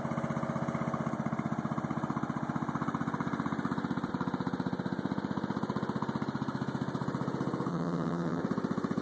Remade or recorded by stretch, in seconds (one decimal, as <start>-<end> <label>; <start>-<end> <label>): 0.0-7.7 recorded; 7.7-8.4 remade; 8.4-9.0 recorded